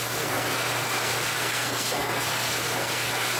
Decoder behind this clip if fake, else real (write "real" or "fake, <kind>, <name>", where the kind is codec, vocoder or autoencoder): fake, codec, SNAC